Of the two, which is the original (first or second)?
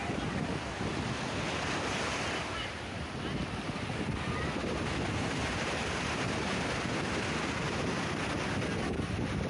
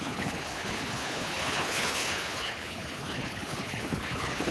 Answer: first